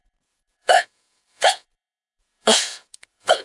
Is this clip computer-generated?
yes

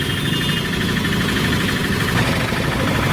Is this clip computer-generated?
no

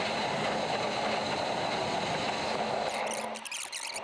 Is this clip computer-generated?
no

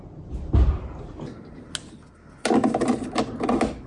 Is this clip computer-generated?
no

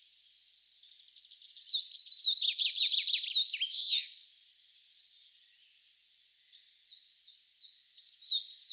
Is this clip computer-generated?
no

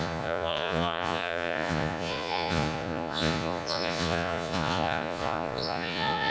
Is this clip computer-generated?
yes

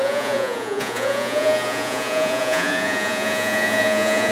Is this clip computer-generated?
yes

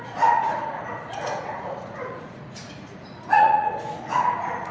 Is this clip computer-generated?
yes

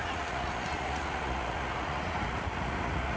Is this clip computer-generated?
yes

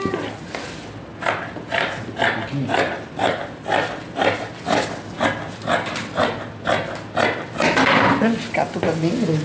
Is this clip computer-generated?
no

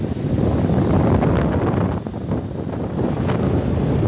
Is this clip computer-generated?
no